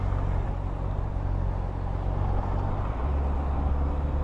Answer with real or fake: real